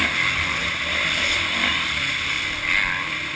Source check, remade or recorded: recorded